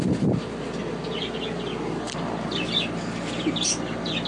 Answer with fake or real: real